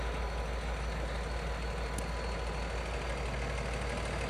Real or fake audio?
real